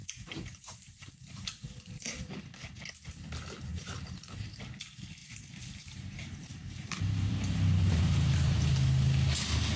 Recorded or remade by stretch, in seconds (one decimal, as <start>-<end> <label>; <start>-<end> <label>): 0.0-2.3 remade; 2.3-3.7 recorded; 3.7-4.5 remade; 4.5-5.2 recorded; 5.2-8.6 remade; 8.6-9.8 recorded